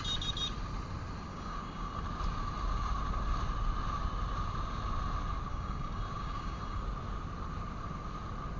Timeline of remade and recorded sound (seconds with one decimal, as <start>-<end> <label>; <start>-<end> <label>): 0.0-1.3 recorded; 1.3-1.9 remade; 1.9-5.5 recorded; 5.5-6.8 remade; 6.8-8.6 recorded